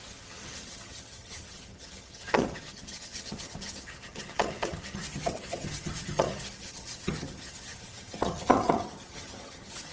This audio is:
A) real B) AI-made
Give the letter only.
B